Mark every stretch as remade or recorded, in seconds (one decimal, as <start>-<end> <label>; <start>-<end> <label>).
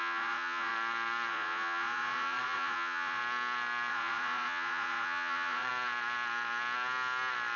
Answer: 0.0-0.7 remade; 0.7-1.3 recorded; 1.3-3.2 remade; 3.2-3.9 recorded; 3.9-5.7 remade; 5.7-7.6 recorded